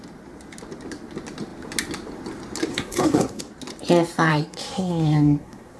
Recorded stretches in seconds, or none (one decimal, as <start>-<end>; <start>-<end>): 0.0-2.7; 3.4-4.3

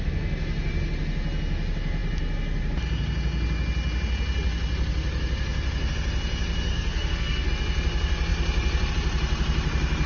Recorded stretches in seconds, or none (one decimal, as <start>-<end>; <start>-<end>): 0.0-6.7; 7.5-10.1

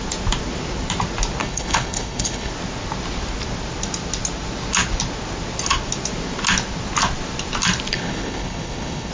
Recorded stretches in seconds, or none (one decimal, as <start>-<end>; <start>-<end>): 0.0-1.4; 2.5-7.9

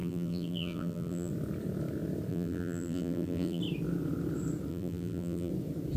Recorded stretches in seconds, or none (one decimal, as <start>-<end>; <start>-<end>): 1.3-2.3; 3.6-4.7; 5.5-6.0